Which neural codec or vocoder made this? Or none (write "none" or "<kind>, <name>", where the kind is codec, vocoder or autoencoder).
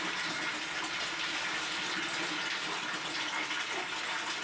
none